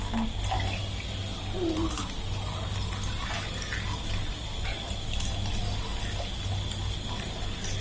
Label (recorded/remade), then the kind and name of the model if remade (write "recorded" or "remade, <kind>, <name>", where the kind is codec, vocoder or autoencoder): recorded